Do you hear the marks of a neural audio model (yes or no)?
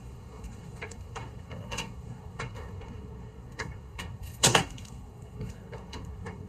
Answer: yes